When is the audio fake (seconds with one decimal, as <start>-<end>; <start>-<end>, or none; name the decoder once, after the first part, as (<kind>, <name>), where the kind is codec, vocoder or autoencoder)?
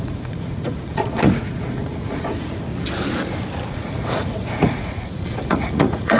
0.0-2.7 (vocoder, Vocos); 3.7-6.2